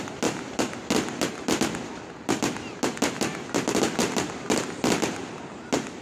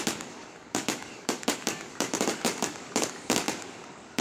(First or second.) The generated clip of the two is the second